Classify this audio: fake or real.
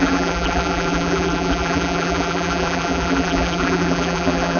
fake